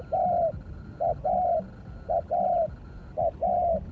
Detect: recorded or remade recorded